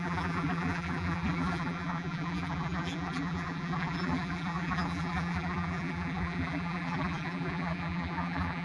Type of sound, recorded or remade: remade